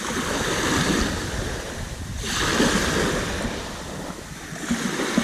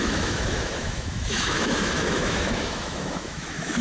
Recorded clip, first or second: first